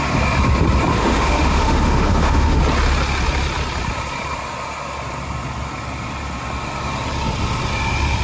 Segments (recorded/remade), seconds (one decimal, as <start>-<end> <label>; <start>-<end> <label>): 0.0-0.9 recorded; 0.9-2.6 remade; 2.6-8.2 recorded